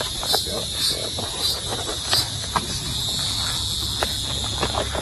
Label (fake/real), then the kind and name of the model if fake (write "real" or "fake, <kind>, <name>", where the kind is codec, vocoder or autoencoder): real